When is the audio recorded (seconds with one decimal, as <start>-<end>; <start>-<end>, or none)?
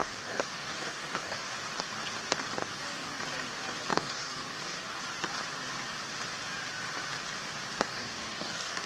1.5-2.6; 3.2-3.9; 5.0-7.9